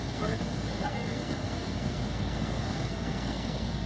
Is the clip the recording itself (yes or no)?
no